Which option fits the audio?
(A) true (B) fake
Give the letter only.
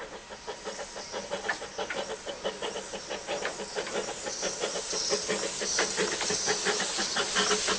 A